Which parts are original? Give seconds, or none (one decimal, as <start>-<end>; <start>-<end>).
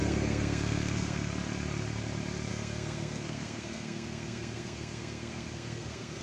1.3-2.5